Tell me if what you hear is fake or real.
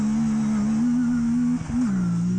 real